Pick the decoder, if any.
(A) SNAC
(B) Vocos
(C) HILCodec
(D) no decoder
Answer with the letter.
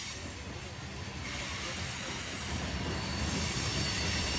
D